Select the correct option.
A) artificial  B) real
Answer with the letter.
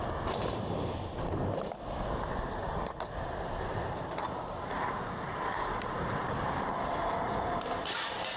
A